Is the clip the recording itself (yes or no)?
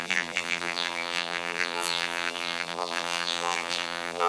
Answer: no